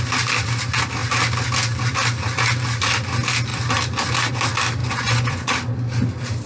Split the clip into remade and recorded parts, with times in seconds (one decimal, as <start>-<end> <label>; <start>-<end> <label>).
0.0-4.8 recorded; 4.8-5.5 remade; 5.5-6.5 recorded

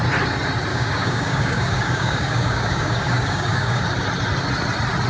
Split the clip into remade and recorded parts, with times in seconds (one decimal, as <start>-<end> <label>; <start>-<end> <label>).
0.0-0.7 recorded; 0.7-3.8 remade; 3.8-5.1 recorded

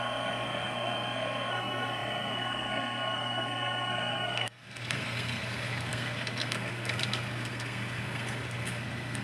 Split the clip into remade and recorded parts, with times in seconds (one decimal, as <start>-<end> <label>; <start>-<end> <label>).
0.0-9.2 remade

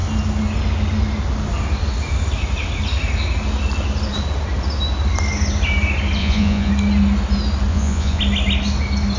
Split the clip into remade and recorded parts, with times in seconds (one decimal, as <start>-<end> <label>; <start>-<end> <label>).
0.0-6.2 recorded; 6.2-6.7 remade; 6.7-7.7 recorded; 7.7-8.2 remade; 8.2-9.2 recorded

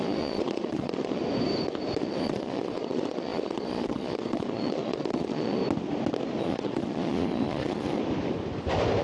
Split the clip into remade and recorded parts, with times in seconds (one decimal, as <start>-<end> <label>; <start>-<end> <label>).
0.0-1.2 remade; 1.2-2.0 recorded; 2.0-5.6 remade; 5.6-6.4 recorded; 6.4-8.0 remade; 8.0-9.0 recorded

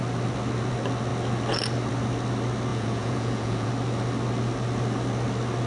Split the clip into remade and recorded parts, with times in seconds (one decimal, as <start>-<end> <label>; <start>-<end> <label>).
0.0-2.7 recorded; 2.7-3.7 remade; 3.7-5.7 recorded

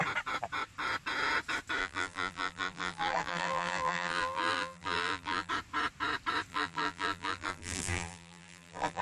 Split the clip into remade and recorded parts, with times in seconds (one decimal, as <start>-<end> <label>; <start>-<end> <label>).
0.0-1.8 recorded; 1.8-5.5 remade; 5.5-6.5 recorded; 6.5-9.0 remade

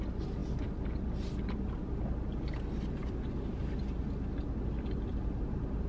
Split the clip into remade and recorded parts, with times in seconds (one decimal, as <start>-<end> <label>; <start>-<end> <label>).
0.0-5.9 recorded